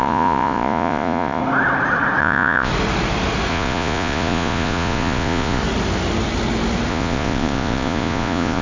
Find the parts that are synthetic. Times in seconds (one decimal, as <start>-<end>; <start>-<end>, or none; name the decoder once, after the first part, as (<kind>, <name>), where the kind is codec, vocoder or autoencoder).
0.0-1.4 (vocoder, Vocos); 2.2-2.7; 3.5-5.6; 6.9-8.6